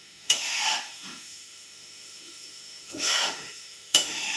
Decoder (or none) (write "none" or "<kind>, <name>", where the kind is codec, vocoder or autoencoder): autoencoder, DAC-VAE